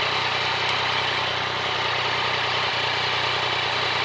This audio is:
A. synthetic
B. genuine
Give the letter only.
B